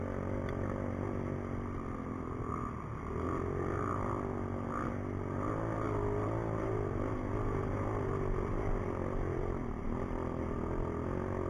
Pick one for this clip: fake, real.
real